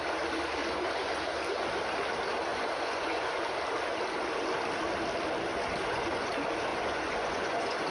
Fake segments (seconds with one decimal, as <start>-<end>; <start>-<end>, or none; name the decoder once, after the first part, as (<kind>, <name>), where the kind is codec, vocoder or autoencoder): 0.6-1.2 (vocoder, Vocos); 2.5-3.4; 5.8-6.3; 6.7-7.9